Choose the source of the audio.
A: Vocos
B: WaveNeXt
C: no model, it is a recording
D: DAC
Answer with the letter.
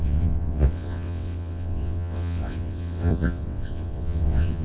B